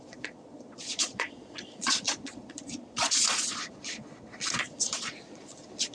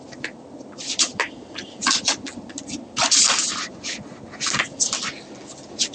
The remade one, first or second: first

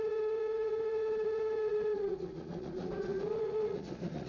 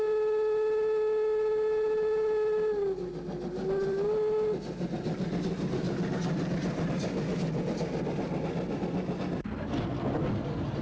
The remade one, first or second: first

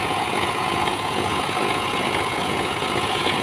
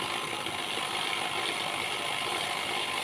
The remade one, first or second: first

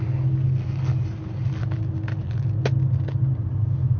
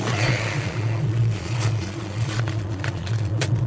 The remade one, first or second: second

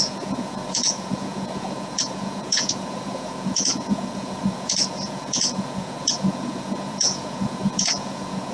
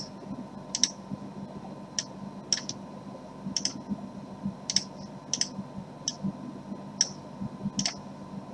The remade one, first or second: first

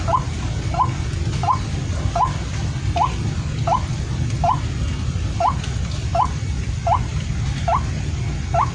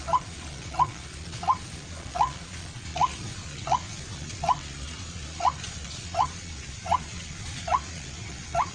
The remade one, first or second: second